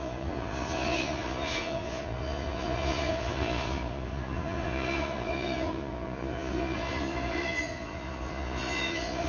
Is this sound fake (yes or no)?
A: yes